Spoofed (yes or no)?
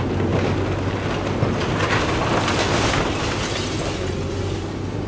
no